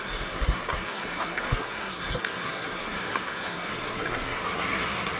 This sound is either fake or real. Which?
fake